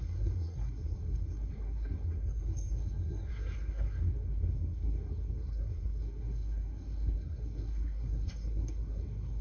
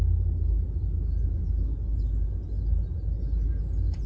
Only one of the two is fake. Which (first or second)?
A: first